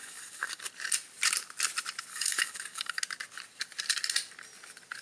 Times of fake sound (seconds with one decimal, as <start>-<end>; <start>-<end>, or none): 0.0-0.6; 2.1-3.0